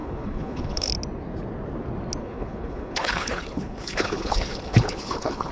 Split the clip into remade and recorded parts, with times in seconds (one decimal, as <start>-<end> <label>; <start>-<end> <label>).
0.0-0.9 remade; 0.9-2.2 recorded; 2.2-5.5 remade